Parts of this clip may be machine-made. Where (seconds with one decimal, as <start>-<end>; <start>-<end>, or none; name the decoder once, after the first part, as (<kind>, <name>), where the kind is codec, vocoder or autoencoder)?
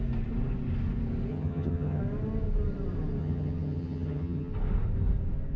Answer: 1.3-2.0 (vocoder, HiFi-GAN); 3.2-4.5